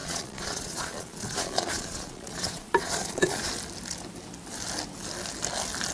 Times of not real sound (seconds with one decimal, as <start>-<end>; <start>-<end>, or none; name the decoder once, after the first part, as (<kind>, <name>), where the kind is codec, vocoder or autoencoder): 0.0-3.5 (vocoder, Vocos)